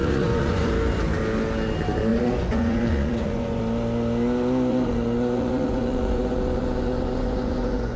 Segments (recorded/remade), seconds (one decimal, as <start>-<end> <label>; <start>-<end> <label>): 0.0-0.7 remade; 0.7-2.1 recorded; 2.1-3.6 remade; 3.6-4.7 recorded; 4.7-8.0 remade